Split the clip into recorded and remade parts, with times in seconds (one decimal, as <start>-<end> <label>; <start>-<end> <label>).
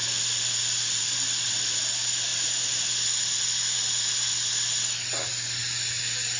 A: 0.0-6.4 recorded